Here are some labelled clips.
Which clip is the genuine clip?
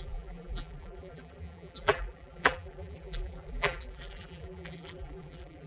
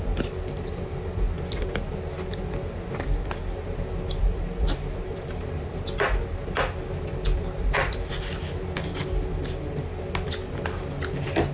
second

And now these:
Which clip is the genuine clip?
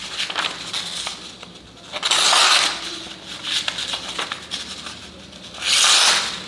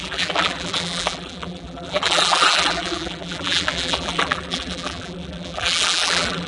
first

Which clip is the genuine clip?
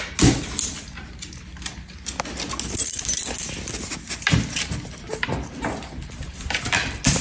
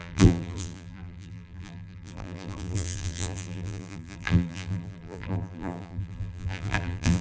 first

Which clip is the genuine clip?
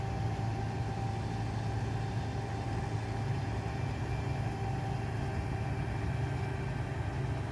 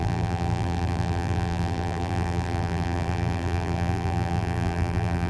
first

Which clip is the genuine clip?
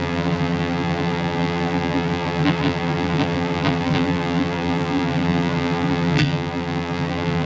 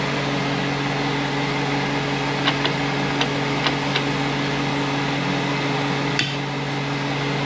second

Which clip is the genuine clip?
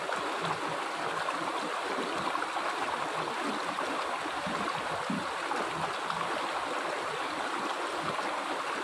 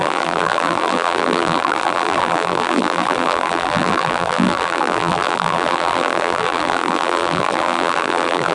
first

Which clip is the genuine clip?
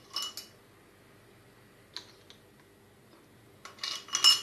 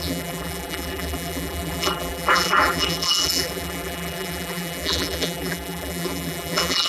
first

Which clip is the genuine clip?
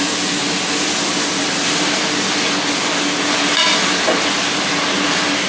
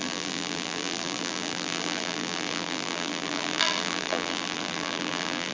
first